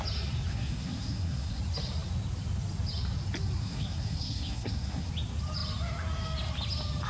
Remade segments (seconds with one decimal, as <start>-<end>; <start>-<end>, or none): 0.5-1.6; 3.6-5.1